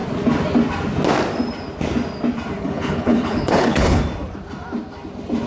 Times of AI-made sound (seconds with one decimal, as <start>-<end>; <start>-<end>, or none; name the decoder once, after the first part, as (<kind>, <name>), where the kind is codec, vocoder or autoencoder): 2.6-4.0 (codec, HILCodec)